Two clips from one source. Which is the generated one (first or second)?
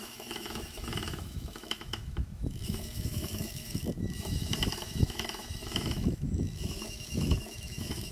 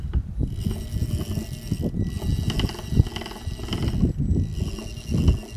first